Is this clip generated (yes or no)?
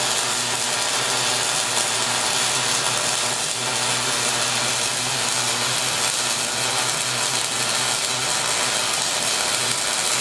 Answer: no